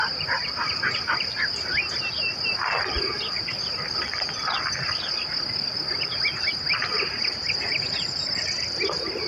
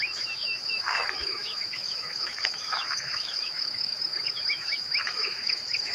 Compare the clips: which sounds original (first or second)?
first